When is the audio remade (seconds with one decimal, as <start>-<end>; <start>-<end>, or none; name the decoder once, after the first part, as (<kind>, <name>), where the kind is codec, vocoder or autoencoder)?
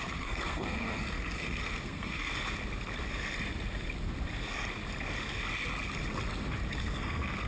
0.0-2.3 (codec, SNAC); 6.8-7.5